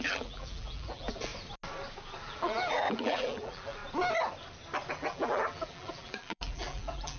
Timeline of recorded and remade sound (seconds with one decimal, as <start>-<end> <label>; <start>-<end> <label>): 0.0-1.3 remade; 1.3-2.2 recorded; 2.2-3.8 remade; 3.8-4.9 recorded; 4.9-7.2 remade